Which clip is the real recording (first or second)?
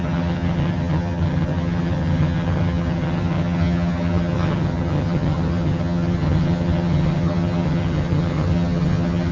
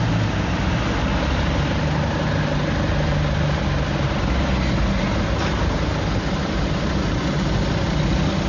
second